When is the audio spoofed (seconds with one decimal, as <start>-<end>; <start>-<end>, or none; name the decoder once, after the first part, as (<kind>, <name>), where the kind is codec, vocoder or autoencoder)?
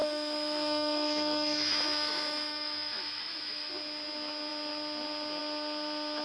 0.0-3.7 (autoencoder, DAC-VAE)